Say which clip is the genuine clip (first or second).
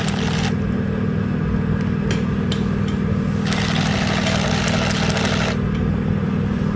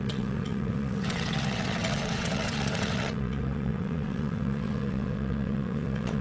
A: first